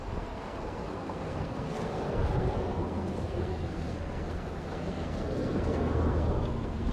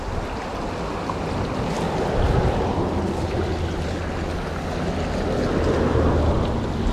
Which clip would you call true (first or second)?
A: second